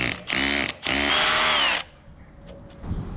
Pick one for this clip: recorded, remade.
recorded